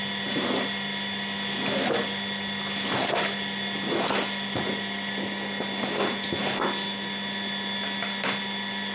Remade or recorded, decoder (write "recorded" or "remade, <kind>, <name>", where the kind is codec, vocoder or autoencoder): recorded